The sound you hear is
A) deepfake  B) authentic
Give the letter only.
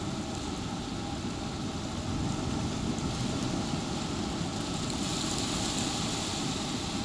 B